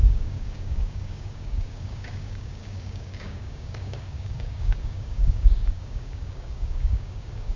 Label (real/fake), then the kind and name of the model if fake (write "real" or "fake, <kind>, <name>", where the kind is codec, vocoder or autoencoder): fake, codec, DAC